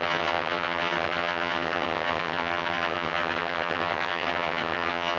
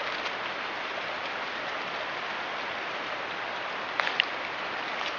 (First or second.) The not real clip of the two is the first